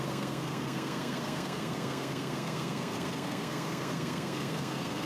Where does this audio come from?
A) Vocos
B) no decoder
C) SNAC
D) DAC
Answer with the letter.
C